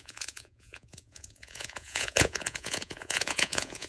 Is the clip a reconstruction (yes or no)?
yes